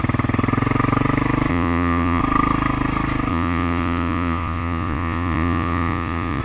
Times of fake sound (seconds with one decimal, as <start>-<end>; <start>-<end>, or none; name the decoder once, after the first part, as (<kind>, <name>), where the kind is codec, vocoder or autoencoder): 1.5-2.2 (vocoder, Vocos); 3.3-6.4